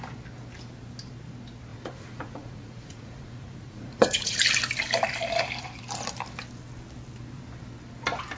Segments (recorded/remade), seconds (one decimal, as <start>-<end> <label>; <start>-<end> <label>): 0.0-1.7 recorded; 1.7-4.4 remade; 4.4-8.4 recorded